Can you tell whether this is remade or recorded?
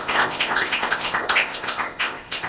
remade